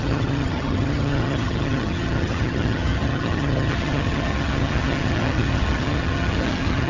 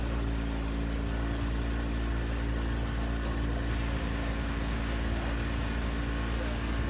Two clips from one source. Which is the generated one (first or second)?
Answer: first